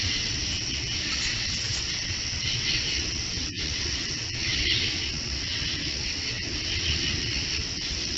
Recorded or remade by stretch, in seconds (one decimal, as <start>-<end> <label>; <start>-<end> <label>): 0.0-8.2 remade